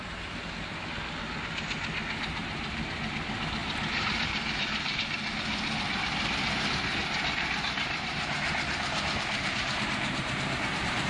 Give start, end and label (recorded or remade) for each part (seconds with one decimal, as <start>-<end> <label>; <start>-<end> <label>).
0.0-2.4 recorded; 2.4-3.1 remade; 3.1-3.6 recorded; 3.6-5.0 remade; 5.0-7.0 recorded; 7.0-11.1 remade